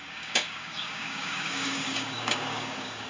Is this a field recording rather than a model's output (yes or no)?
no